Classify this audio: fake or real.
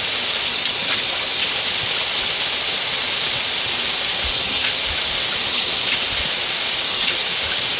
real